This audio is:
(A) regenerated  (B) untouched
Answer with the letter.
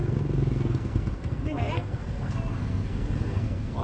A